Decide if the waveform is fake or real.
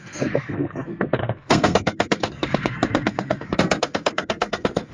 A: fake